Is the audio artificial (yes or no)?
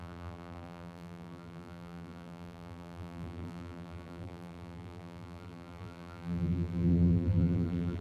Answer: yes